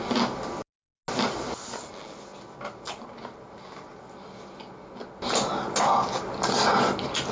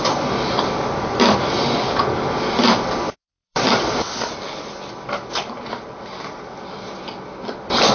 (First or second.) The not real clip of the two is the second